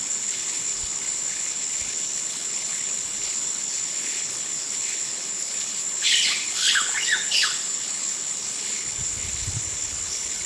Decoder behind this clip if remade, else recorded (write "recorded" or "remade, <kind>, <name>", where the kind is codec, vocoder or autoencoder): remade, codec, HILCodec